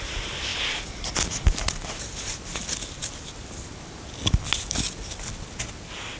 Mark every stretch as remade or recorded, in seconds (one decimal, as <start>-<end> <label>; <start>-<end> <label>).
0.0-6.2 recorded